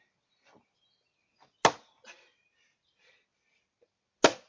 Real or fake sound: real